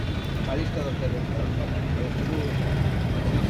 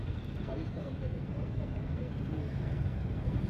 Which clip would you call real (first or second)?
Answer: first